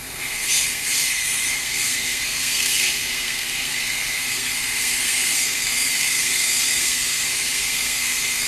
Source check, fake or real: fake